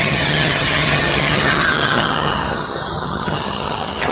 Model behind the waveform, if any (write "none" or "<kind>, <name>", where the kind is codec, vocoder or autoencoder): vocoder, HiFi-GAN